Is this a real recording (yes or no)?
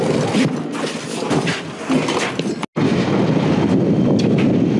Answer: yes